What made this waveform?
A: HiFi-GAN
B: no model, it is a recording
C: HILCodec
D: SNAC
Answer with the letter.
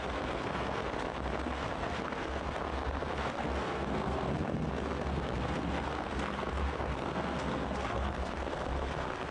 D